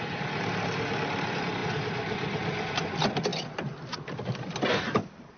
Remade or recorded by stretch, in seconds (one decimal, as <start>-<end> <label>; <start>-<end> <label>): 0.0-5.4 recorded